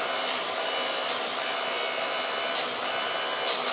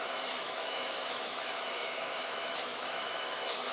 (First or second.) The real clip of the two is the first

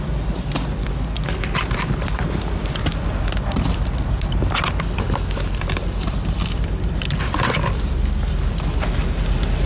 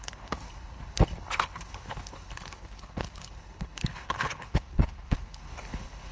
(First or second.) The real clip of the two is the first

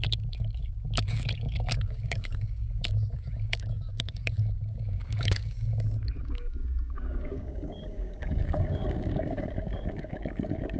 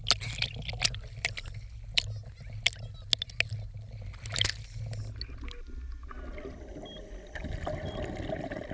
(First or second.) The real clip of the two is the second